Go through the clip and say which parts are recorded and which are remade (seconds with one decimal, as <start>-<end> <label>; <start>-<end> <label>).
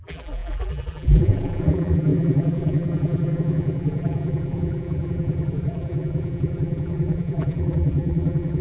0.0-8.6 remade